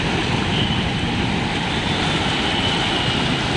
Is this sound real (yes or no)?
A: yes